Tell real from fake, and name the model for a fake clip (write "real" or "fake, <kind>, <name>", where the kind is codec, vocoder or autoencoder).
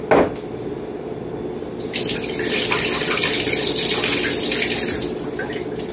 real